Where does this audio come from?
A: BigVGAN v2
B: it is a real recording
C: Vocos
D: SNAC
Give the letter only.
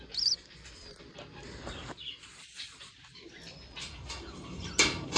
B